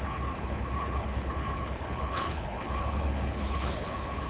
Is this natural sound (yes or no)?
no